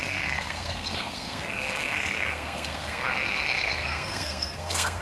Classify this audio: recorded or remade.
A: remade